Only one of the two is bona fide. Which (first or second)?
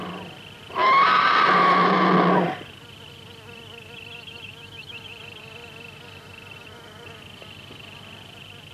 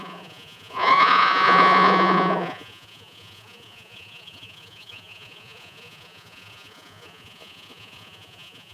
first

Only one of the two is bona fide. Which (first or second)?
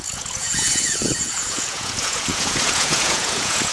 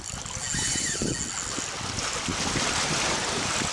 second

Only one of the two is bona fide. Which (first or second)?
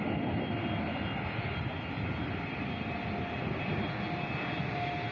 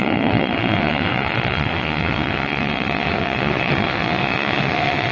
first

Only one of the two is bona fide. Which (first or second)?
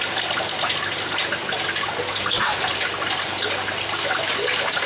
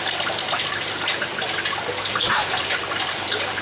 first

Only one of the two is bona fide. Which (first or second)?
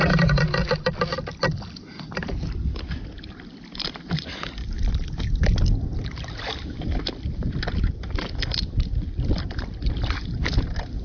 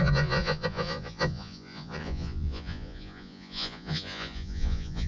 first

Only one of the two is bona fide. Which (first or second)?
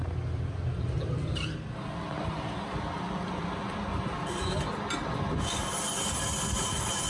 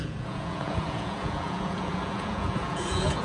first